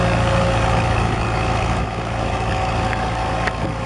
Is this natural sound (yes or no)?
no